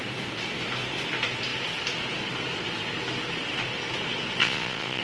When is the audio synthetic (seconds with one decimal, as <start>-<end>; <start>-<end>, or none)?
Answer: 4.4-5.0